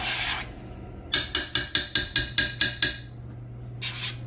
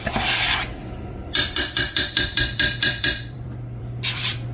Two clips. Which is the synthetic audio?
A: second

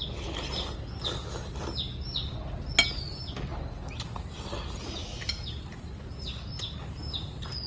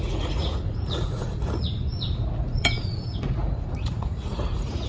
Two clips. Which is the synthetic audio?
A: second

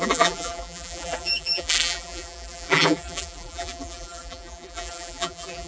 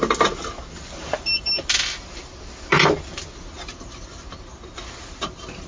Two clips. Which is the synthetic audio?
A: first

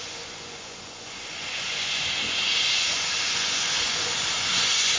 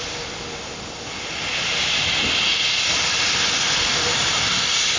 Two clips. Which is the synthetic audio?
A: first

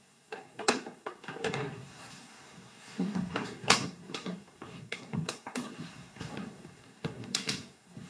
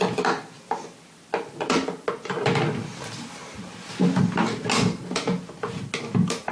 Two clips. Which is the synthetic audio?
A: first